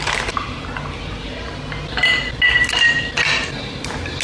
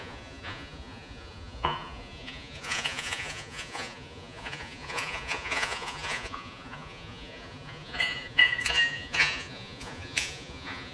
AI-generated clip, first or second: second